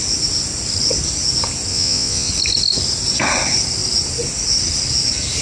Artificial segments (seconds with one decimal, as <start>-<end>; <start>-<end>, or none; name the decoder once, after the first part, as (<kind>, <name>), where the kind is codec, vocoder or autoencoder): 1.7-2.3 (vocoder, Vocos)